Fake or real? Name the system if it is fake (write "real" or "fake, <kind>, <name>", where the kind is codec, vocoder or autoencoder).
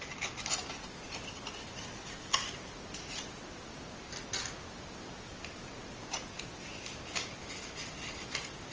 real